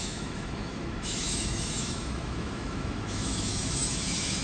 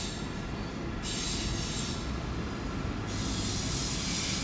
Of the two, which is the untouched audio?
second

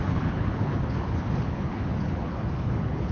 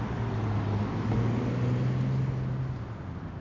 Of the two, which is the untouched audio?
second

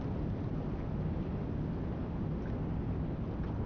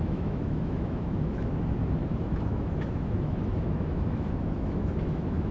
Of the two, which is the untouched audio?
first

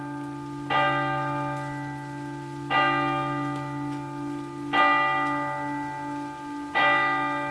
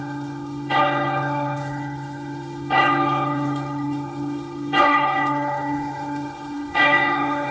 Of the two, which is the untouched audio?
first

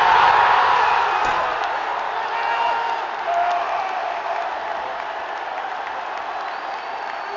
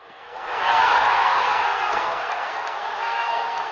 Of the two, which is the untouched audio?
first